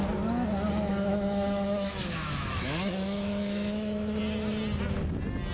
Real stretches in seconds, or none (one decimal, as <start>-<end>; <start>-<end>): 0.0-0.9; 4.2-5.5